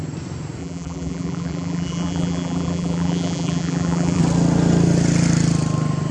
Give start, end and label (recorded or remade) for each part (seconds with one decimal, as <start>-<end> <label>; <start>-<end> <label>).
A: 0.0-0.6 recorded; 0.6-4.2 remade; 4.2-6.1 recorded